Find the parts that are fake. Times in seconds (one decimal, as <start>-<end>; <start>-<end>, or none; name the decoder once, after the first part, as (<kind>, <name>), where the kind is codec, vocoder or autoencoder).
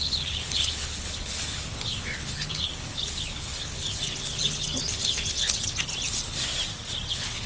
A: 0.0-6.5 (codec, HILCodec); 7.1-7.5